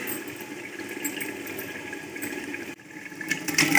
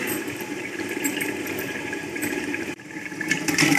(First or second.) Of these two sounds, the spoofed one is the second